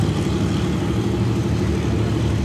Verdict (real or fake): real